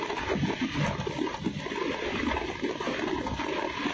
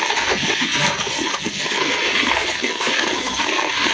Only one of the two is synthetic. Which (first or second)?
second